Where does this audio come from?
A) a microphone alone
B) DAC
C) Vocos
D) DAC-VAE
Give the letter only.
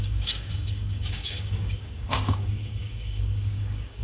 B